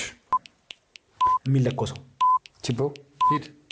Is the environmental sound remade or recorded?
recorded